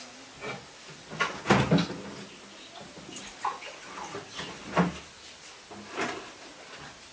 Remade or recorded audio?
recorded